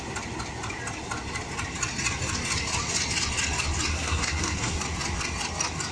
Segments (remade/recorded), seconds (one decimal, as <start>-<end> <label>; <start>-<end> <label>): 0.0-3.9 recorded; 3.9-4.8 remade; 4.8-5.9 recorded